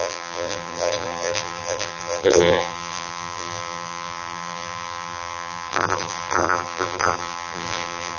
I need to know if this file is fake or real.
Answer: fake